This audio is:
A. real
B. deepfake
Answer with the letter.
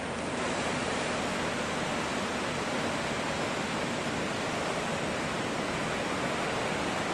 A